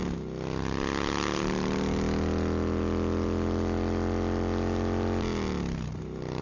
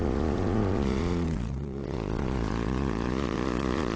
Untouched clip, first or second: first